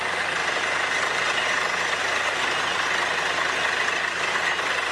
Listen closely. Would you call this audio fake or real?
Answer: real